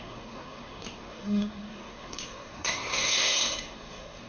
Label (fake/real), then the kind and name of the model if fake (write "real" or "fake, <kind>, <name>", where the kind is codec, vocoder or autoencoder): fake, codec, SNAC